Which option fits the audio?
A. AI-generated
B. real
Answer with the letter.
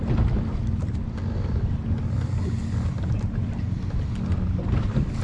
B